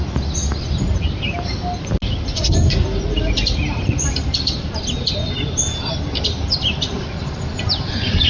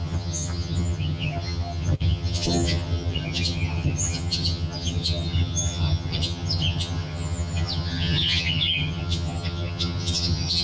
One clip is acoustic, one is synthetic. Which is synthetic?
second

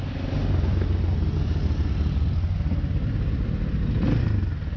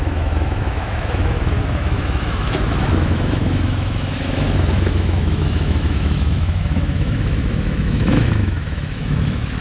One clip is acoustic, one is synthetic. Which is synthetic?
second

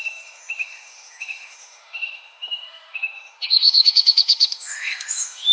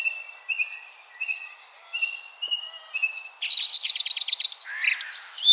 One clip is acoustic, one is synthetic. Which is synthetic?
first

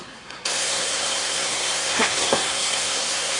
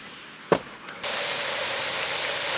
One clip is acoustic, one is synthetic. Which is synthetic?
first